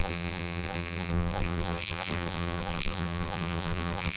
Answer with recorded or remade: remade